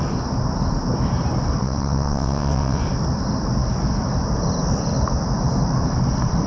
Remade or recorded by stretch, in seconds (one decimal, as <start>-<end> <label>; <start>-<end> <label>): 0.0-1.6 recorded; 1.6-2.8 remade; 2.8-6.5 recorded